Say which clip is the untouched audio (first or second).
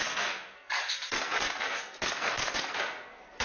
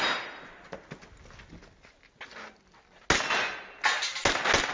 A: second